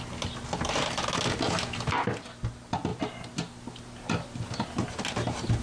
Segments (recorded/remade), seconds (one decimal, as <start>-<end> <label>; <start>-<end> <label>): 0.0-5.6 recorded